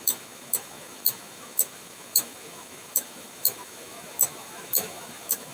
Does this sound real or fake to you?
fake